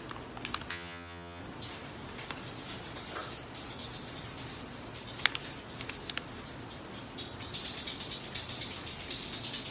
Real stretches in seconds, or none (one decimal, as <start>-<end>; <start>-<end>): 0.0-0.7; 1.4-9.7